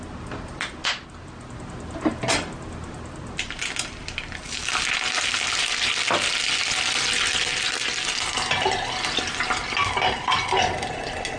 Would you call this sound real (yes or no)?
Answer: yes